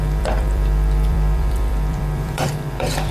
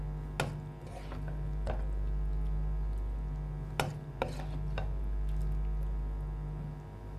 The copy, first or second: first